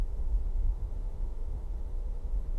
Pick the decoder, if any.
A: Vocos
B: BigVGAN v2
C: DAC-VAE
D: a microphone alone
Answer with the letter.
C